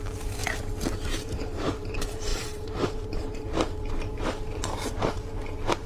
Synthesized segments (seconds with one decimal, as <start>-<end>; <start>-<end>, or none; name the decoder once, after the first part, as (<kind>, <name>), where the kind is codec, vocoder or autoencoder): 0.0-0.4 (vocoder, BigVGAN v2); 1.1-5.9